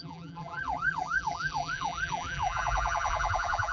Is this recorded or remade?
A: remade